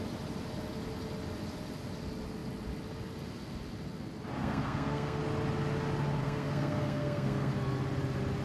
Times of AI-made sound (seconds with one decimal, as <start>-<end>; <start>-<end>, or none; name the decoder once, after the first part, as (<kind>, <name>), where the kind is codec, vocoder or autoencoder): 4.4-5.2 (codec, SNAC); 6.2-7.5